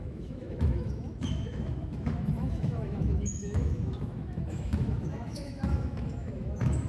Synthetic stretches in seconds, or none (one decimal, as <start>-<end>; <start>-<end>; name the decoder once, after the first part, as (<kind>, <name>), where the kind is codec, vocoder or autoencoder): 0.0-6.9 (autoencoder, DAC-VAE)